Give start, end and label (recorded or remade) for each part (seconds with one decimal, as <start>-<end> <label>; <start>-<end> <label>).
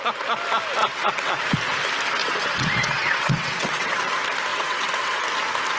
0.0-0.8 recorded; 0.8-1.4 remade; 1.4-2.2 recorded; 2.2-4.1 remade; 4.1-4.5 recorded; 4.5-5.2 remade; 5.2-5.8 recorded